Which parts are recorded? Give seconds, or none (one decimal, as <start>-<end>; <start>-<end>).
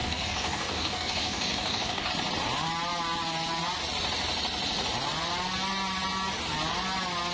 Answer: 2.1-7.3